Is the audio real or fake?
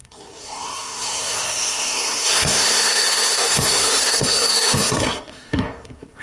fake